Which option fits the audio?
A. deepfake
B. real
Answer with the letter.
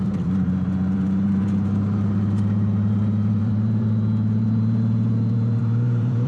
A